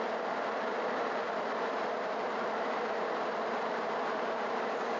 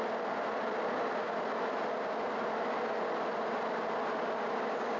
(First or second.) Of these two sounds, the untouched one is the second